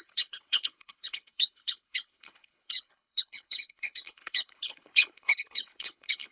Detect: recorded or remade remade